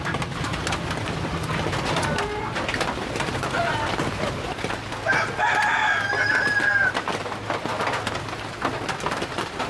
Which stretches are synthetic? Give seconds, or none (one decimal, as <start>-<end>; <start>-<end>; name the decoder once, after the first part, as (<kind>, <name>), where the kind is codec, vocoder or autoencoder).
none